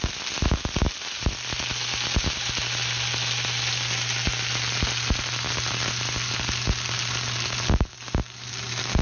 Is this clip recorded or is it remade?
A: recorded